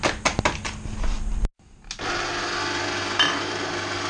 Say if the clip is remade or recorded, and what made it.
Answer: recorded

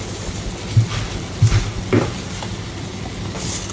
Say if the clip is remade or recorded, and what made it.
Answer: recorded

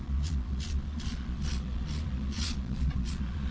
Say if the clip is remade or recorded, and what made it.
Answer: remade, vocoder, Vocos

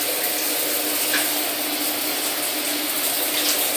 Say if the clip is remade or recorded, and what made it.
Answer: recorded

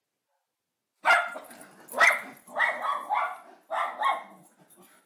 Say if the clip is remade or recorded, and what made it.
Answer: recorded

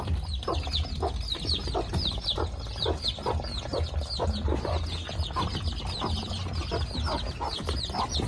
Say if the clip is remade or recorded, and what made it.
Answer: recorded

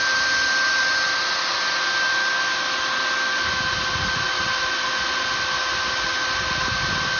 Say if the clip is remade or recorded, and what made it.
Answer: recorded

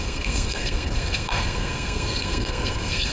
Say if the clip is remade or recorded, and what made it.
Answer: remade, codec, SNAC